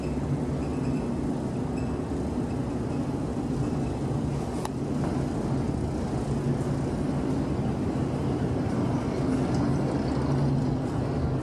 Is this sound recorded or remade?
recorded